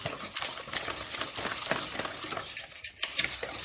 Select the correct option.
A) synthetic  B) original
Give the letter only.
B